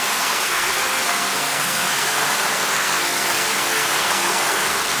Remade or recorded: remade